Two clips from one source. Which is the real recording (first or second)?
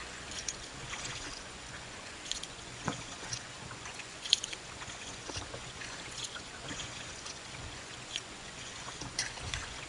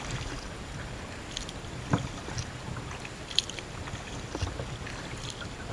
second